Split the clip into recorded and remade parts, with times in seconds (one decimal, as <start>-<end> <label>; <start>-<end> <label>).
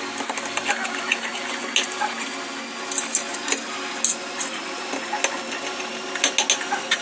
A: 0.0-7.0 recorded